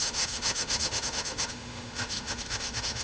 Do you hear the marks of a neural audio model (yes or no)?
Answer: yes